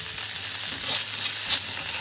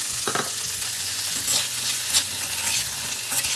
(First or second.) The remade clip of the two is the second